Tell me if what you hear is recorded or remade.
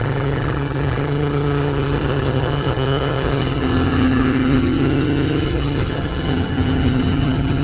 remade